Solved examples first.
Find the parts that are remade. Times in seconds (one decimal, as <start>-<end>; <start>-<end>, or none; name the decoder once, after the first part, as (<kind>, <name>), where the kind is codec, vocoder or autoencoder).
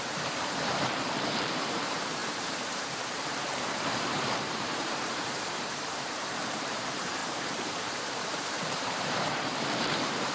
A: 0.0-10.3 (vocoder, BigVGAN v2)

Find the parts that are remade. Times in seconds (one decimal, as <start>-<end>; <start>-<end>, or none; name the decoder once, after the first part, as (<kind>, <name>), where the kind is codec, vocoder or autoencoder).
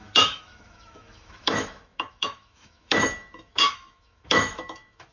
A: 0.0-5.1 (autoencoder, DAC-VAE)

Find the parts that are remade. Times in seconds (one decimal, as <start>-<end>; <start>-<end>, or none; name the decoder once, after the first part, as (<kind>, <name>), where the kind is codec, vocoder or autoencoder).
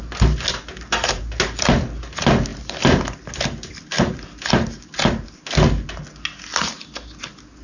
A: none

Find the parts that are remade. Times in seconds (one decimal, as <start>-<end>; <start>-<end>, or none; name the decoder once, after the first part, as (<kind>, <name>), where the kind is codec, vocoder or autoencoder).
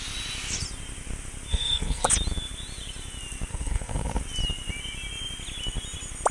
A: 1.5-2.1 (codec, SNAC); 3.5-4.2